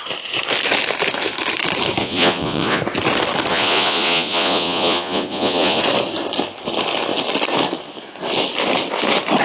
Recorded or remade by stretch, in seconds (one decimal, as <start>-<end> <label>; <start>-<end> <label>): 0.0-2.0 recorded; 2.0-2.8 remade; 2.8-3.5 recorded; 3.5-5.8 remade; 5.8-9.4 recorded